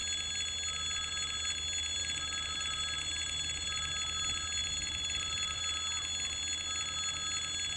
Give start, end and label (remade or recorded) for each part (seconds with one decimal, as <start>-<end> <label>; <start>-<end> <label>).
0.0-2.0 recorded; 2.0-3.9 remade; 3.9-4.6 recorded; 4.6-5.6 remade; 5.6-7.8 recorded

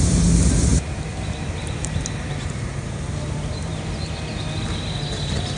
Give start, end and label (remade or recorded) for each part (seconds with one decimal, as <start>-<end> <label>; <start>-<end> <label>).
0.0-3.7 remade; 3.7-5.6 recorded